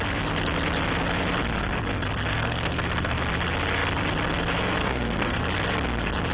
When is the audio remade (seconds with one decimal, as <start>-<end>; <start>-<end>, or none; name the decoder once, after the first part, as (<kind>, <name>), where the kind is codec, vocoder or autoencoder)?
2.3-3.2 (codec, SNAC); 4.8-5.4